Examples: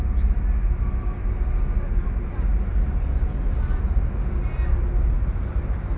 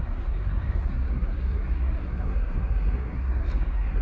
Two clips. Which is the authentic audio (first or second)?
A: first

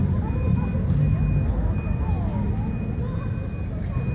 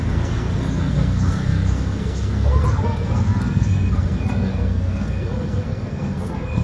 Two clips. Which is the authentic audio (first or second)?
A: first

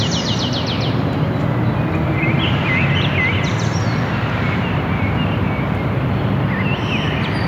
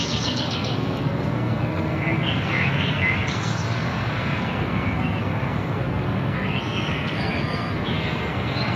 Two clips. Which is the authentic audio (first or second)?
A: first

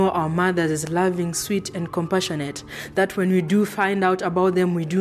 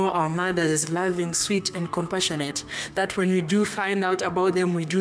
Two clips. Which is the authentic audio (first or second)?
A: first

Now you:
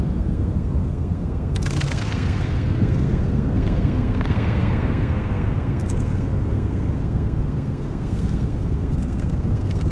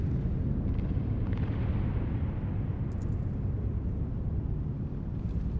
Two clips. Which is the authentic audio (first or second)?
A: second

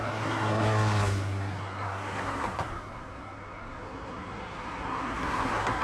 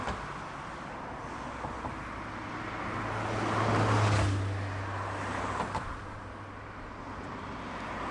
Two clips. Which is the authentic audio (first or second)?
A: second